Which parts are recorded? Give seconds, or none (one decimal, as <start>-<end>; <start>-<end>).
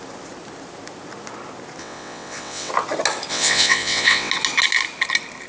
0.0-1.8; 2.7-3.3; 4.3-5.5